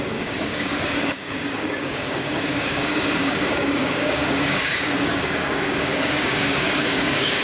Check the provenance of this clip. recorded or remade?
remade